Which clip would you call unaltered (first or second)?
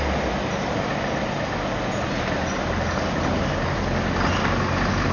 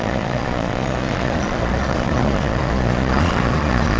first